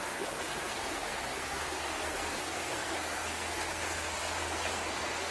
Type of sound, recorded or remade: remade